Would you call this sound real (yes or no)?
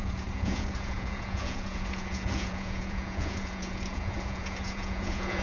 no